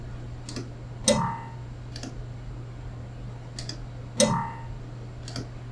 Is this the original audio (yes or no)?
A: yes